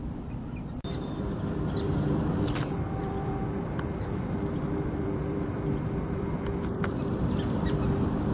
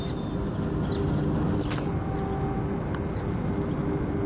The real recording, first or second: second